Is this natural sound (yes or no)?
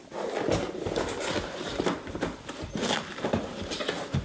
no